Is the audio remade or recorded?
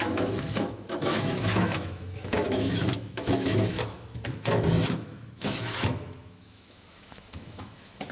remade